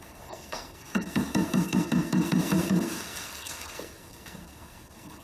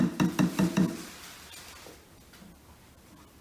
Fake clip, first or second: first